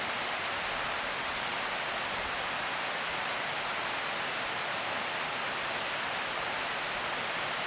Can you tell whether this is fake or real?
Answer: real